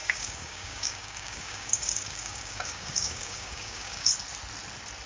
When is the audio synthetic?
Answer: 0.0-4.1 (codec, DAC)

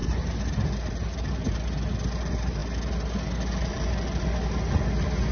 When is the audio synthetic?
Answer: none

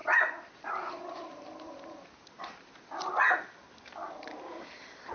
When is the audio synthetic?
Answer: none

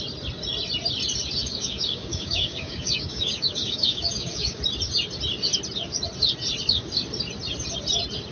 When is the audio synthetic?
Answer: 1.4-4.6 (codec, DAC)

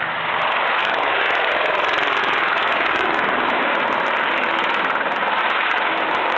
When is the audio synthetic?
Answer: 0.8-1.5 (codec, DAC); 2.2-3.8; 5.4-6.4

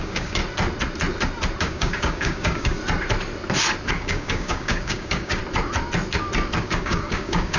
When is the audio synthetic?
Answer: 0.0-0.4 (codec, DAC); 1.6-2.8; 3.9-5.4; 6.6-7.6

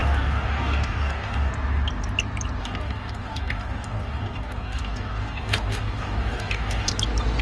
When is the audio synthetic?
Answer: 0.0-1.5 (codec, DAC); 2.6-6.9